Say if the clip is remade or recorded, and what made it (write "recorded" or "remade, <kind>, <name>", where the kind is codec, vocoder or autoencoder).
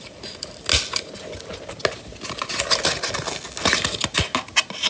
recorded